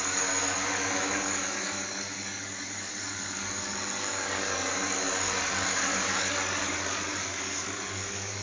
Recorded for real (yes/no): no